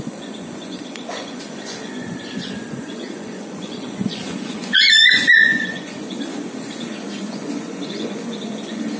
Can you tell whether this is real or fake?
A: fake